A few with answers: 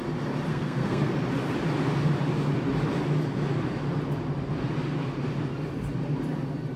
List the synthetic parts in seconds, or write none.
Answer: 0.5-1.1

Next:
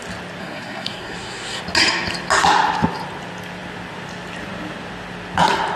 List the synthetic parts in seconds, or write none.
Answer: 0.4-1.6